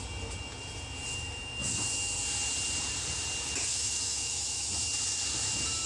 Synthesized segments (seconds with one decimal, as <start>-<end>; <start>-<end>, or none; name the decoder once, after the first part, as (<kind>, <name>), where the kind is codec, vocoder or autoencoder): 3.7-4.7 (autoencoder, DAC-VAE)